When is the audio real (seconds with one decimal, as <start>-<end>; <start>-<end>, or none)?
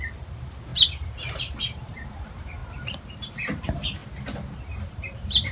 2.6-3.6; 4.0-4.6